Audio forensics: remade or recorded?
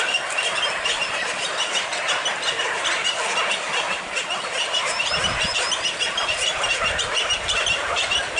recorded